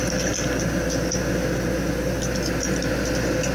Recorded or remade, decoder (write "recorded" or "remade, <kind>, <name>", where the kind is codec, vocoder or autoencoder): recorded